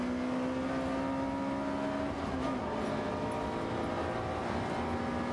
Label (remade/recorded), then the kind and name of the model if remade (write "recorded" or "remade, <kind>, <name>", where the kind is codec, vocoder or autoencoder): recorded